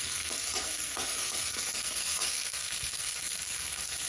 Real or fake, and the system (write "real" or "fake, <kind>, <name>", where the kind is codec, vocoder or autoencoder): fake, codec, SNAC